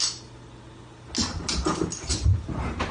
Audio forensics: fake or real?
real